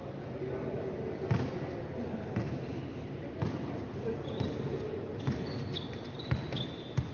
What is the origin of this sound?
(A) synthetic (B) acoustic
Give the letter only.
B